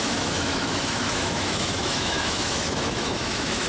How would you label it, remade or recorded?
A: remade